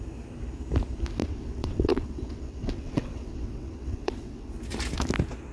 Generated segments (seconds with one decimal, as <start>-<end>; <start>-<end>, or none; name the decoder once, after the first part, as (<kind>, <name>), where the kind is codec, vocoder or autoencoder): 1.2-4.5 (vocoder, WaveNeXt)